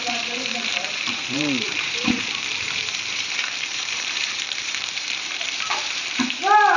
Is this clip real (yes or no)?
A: no